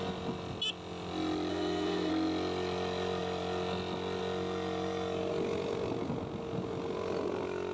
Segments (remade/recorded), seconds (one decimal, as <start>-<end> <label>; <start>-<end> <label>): 0.0-1.5 recorded; 1.5-2.1 remade; 2.1-7.7 recorded